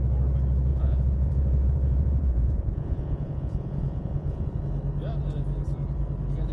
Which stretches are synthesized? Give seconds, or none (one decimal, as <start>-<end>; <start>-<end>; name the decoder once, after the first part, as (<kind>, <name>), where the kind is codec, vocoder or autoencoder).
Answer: 0.7-4.6 (vocoder, Vocos)